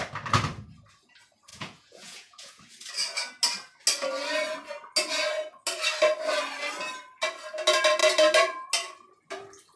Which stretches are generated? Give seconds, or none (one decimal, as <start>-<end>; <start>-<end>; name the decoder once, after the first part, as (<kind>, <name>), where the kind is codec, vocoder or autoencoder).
1.5-2.6 (vocoder, Vocos)